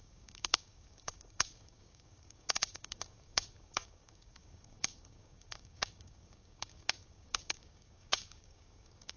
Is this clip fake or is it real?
fake